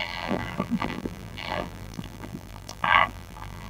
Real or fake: fake